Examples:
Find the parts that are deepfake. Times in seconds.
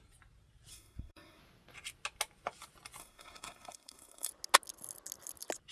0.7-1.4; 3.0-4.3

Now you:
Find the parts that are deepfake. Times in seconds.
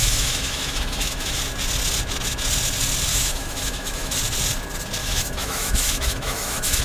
0.0-1.4; 3.1-4.2; 5.0-6.8